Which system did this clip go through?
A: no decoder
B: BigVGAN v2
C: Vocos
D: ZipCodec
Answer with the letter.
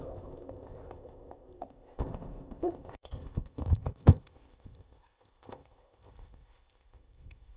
D